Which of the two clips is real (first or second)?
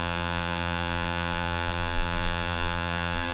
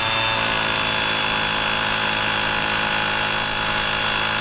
second